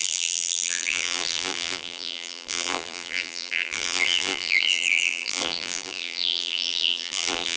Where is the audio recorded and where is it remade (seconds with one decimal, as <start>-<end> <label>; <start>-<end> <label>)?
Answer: 0.0-7.6 remade